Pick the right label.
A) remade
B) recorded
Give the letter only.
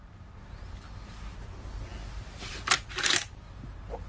B